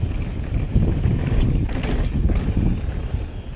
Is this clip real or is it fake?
real